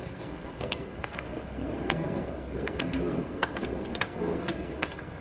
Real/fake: fake